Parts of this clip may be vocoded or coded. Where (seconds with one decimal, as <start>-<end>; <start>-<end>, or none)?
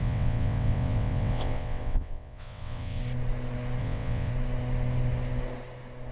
0.0-3.0; 3.8-4.3